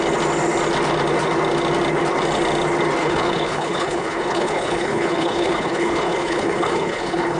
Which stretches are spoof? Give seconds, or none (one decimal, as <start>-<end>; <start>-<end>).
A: 3.0-7.4